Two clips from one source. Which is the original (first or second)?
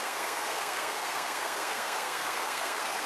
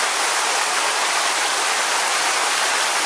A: second